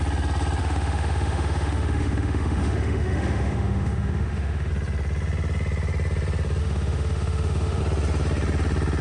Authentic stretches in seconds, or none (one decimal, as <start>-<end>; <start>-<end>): 0.0-0.6; 4.7-6.6; 7.8-9.0

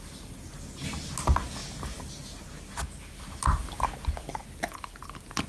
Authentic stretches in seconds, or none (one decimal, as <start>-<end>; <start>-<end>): 0.0-5.5